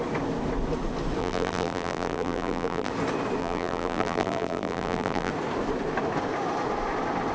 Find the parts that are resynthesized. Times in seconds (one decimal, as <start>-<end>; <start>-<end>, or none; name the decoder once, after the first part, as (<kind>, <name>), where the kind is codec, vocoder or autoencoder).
1.2-2.9 (vocoder, BigVGAN v2); 3.4-5.3

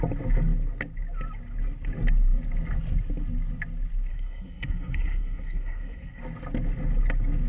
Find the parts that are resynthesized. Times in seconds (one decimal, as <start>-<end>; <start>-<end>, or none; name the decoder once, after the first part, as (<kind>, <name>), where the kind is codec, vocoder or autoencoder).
4.1-6.2 (codec, SNAC)

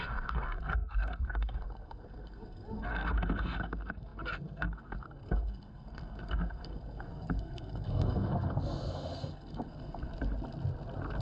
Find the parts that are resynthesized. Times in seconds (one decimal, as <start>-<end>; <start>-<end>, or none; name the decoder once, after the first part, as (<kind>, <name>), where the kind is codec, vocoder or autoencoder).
0.0-10.1 (codec, SNAC)

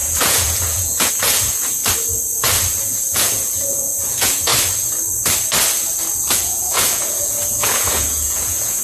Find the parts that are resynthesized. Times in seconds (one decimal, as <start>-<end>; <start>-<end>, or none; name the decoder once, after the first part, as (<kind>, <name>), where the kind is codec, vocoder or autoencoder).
0.0-1.8 (vocoder, Vocos); 2.8-4.5; 6.3-8.8